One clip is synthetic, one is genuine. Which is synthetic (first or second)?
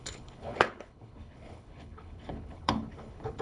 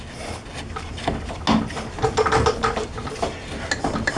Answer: first